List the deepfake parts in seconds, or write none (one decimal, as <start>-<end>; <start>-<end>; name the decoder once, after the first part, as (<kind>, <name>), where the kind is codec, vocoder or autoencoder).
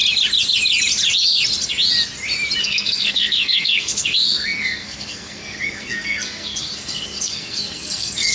2.6-8.3 (codec, SNAC)